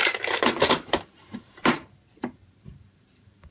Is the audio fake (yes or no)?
yes